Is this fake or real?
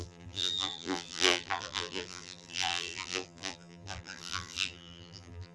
fake